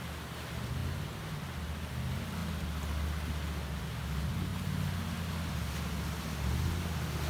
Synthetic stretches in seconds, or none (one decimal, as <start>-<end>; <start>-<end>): none